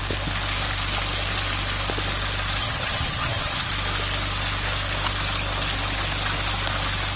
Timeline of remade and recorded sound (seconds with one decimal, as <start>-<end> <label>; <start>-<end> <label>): 0.0-2.6 recorded; 2.6-3.7 remade; 3.7-7.2 recorded